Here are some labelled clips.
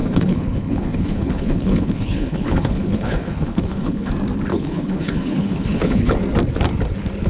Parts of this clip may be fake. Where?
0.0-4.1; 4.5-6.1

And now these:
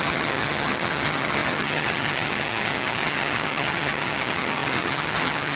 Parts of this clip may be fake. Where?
0.0-5.6